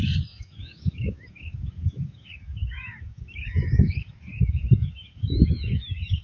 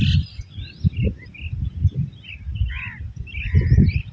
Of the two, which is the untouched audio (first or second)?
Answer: second